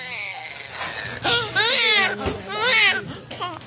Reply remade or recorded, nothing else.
recorded